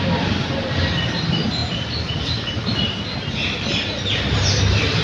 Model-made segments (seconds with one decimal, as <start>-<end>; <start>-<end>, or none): none